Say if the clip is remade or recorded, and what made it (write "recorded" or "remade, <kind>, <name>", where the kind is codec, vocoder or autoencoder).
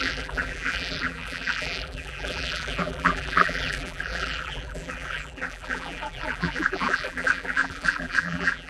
remade, vocoder, BigVGAN v2